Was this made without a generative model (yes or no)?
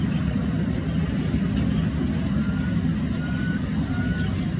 yes